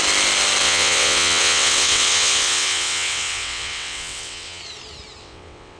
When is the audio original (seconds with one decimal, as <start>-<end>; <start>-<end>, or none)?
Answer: 0.0-0.6; 4.6-5.2